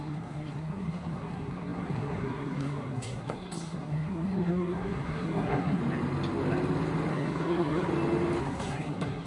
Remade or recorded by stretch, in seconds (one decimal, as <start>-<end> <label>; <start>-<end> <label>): 0.0-5.8 remade; 5.8-7.1 recorded; 7.1-7.9 remade; 7.9-8.4 recorded; 8.4-9.3 remade